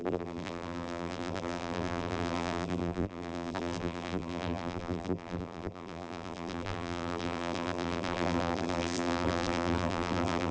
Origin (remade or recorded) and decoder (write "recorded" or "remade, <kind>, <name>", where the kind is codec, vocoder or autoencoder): remade, vocoder, BigVGAN v2